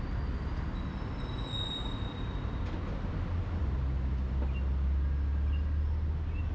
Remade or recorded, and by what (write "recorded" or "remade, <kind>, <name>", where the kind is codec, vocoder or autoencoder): recorded